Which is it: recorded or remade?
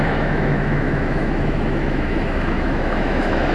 remade